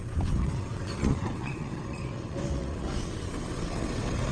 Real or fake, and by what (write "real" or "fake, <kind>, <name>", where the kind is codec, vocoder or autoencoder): fake, vocoder, WaveNeXt